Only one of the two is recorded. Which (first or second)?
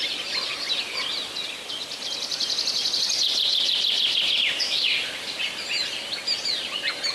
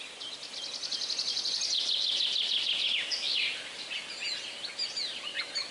second